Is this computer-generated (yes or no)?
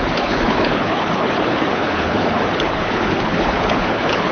yes